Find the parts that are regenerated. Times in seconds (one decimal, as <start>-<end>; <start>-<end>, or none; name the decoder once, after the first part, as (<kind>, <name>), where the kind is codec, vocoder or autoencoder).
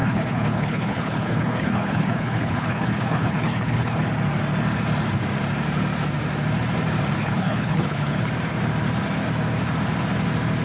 0.0-4.0 (codec, HILCodec); 7.2-8.3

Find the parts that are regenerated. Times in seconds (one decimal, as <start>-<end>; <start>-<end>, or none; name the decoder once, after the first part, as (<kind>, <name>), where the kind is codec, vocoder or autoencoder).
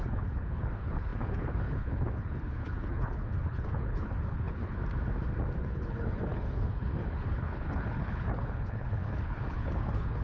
0.0-4.8 (codec, HILCodec); 5.6-10.2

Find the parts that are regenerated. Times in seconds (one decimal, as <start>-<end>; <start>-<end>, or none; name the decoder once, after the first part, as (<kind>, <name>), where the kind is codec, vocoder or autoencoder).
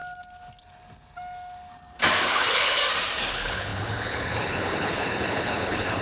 2.2-2.8 (codec, HILCodec); 3.3-6.0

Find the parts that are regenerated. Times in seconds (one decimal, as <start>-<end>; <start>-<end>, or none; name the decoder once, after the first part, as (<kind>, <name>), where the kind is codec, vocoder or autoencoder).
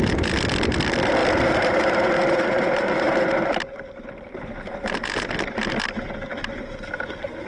none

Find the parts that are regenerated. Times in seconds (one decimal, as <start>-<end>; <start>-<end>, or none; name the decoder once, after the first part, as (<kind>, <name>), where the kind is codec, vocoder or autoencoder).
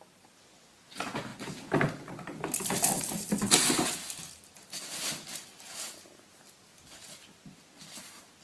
none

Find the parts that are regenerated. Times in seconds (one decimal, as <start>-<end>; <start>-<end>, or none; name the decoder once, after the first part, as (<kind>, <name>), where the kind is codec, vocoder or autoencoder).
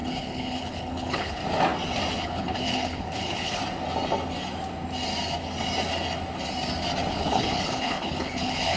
0.0-1.4 (codec, HILCodec); 2.2-3.6; 7.1-8.8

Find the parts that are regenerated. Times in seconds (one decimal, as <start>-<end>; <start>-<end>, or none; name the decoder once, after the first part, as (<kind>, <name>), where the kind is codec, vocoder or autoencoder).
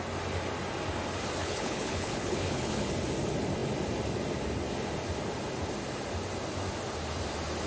1.4-2.9 (codec, HILCodec)